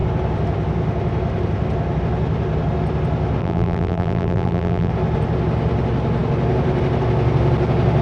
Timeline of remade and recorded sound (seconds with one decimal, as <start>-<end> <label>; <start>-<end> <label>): 0.0-3.4 recorded; 3.4-4.9 remade; 4.9-8.0 recorded